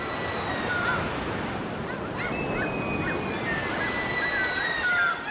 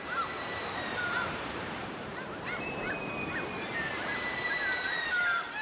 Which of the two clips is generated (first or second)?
second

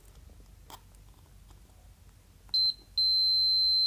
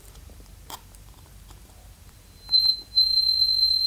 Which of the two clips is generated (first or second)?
second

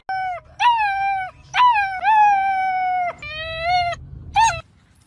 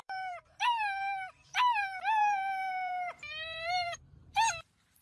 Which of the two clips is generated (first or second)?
second